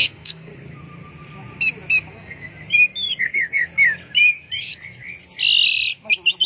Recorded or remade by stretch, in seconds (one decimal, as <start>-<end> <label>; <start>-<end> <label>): 0.0-0.5 remade; 0.5-2.1 recorded; 2.1-2.5 remade; 2.5-3.2 recorded; 3.2-3.7 remade; 3.7-6.5 recorded